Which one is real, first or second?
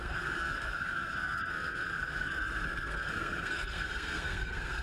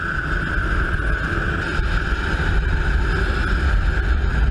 second